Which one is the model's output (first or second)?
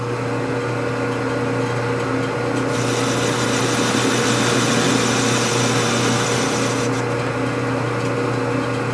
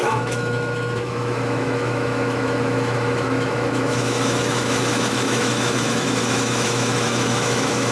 second